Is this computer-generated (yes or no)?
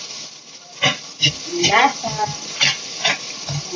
no